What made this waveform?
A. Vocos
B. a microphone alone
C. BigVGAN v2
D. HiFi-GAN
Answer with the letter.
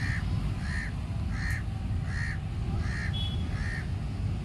B